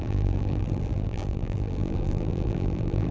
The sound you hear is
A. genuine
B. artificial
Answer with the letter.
B